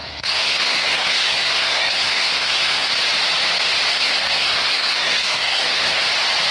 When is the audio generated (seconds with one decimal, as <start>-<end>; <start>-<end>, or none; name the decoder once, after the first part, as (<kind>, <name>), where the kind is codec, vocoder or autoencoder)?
0.0-2.9 (codec, SNAC); 3.9-6.0